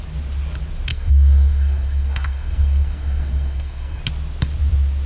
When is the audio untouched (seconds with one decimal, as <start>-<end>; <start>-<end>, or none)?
0.0-0.9; 4.0-5.1